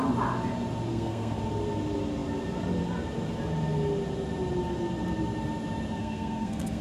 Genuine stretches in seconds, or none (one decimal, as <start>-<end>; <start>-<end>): 0.0-0.9; 1.4-6.0